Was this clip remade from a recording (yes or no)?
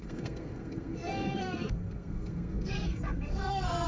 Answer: yes